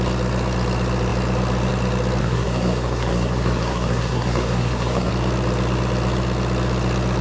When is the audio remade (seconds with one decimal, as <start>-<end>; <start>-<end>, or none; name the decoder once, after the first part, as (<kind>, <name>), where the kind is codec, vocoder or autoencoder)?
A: 2.2-5.1 (codec, SNAC)